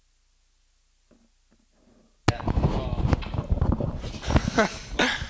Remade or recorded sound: recorded